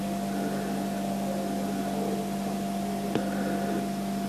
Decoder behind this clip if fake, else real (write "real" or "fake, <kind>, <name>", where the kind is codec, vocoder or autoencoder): real